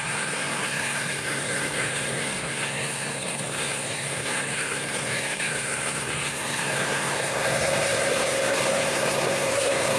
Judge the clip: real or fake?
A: fake